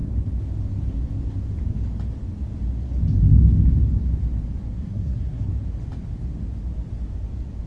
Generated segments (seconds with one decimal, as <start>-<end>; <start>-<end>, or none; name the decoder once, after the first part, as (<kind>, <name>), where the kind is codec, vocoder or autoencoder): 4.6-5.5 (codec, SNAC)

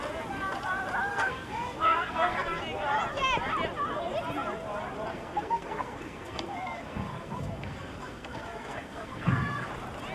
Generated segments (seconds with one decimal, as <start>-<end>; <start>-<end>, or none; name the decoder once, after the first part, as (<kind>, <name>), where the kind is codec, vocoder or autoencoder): 1.1-2.6 (codec, SNAC); 5.1-9.7

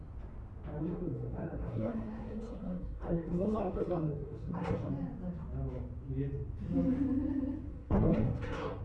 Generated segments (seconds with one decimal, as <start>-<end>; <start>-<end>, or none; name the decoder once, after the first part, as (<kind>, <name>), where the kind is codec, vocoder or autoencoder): 0.8-4.9 (codec, SNAC); 7.7-8.8